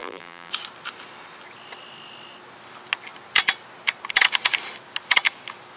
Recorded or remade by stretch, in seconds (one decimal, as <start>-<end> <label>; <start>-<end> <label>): 0.0-0.5 remade; 0.5-5.8 recorded

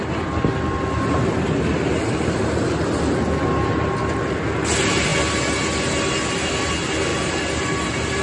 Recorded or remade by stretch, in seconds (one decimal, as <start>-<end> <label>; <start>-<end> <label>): 0.0-7.1 recorded; 7.1-8.2 remade

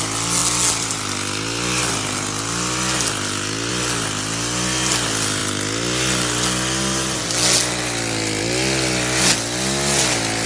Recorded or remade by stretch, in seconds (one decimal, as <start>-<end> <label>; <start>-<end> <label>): 0.0-10.5 recorded

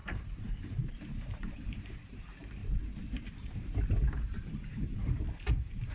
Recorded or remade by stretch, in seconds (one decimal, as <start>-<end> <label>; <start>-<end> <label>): 0.0-5.9 remade

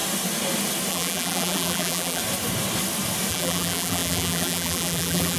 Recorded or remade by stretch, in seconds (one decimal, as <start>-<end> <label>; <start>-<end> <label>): 0.0-0.9 recorded; 0.9-2.2 remade; 2.2-3.3 recorded; 3.3-5.4 remade

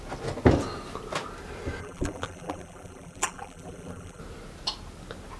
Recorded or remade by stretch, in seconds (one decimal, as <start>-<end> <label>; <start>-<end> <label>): 0.0-1.8 recorded; 1.8-4.2 remade; 4.2-5.4 recorded